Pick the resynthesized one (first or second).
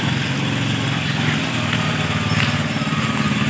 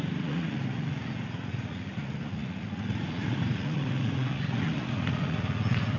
second